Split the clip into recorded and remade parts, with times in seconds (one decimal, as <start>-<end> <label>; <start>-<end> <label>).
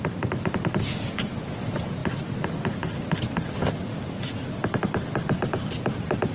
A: 0.0-6.3 recorded